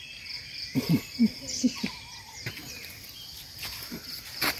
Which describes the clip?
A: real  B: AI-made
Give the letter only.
B